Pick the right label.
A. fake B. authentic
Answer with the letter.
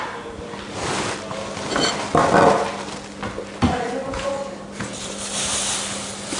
B